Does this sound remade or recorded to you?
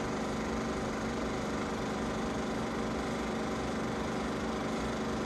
remade